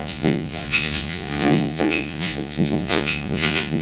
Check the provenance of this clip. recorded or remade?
remade